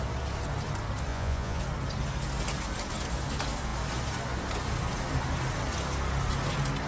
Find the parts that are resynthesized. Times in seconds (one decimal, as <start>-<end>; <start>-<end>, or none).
1.1-1.6